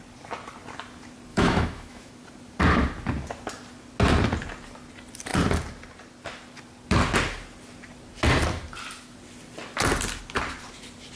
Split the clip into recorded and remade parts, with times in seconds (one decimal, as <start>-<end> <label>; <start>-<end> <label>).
0.0-1.3 recorded; 1.3-2.1 remade; 2.1-11.2 recorded

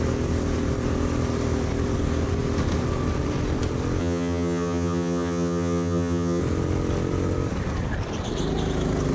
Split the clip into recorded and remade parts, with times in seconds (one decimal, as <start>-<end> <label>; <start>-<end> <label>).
0.0-4.0 recorded; 4.0-6.4 remade; 6.4-9.1 recorded